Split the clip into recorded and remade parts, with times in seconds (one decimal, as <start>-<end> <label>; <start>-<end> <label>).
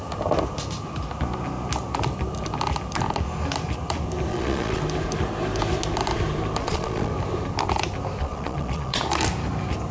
0.0-4.3 recorded; 4.3-4.8 remade; 4.8-6.6 recorded; 6.6-7.1 remade; 7.1-8.2 recorded; 8.2-9.0 remade; 9.0-9.9 recorded